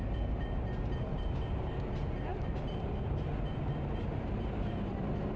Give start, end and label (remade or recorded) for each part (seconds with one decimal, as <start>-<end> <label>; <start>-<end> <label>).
0.0-5.4 remade